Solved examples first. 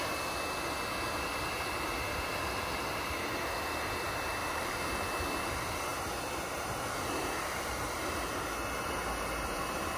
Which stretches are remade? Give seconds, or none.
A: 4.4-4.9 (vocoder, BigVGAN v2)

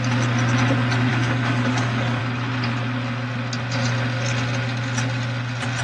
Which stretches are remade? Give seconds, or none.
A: 1.1-2.2 (codec, DAC)

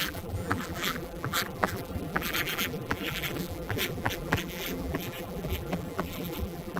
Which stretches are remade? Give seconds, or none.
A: 0.0-6.8 (vocoder, BigVGAN v2)